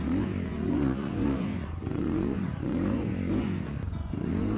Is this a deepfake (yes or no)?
yes